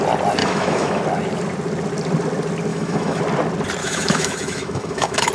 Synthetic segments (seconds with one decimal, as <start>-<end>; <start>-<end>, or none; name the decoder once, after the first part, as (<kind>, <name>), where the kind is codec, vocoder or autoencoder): 0.4-1.0 (autoencoder, DAC-VAE); 2.7-3.2; 3.8-5.3